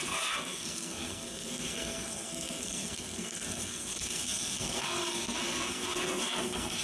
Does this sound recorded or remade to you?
remade